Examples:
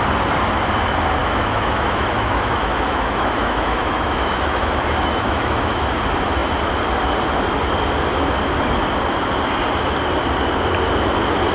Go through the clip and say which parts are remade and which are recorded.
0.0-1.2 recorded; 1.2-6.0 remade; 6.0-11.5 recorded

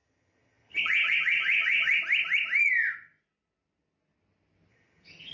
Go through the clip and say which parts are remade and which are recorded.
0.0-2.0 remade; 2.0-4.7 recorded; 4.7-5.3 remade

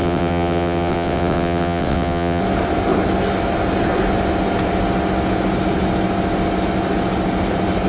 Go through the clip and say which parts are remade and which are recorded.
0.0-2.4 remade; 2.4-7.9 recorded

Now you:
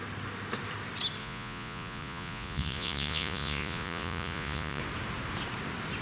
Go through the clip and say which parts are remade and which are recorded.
0.0-1.2 recorded; 1.2-4.8 remade; 4.8-6.0 recorded

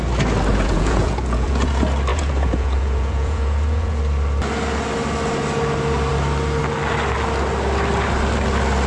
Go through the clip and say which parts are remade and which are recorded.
0.0-0.5 recorded; 0.5-1.7 remade; 1.7-2.1 recorded; 2.1-4.0 remade; 4.0-8.9 recorded